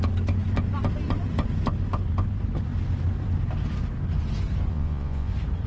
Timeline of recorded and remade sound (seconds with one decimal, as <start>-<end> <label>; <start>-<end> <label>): 0.0-4.7 recorded; 4.7-5.3 remade; 5.3-5.7 recorded